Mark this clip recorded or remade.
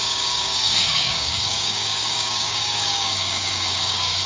remade